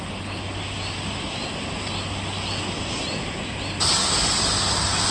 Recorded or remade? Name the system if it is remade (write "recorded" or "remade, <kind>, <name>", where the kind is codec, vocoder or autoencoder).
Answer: recorded